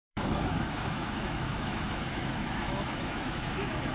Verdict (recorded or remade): remade